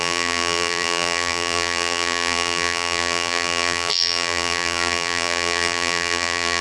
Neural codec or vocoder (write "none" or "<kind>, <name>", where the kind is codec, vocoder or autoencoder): vocoder, BigVGAN v2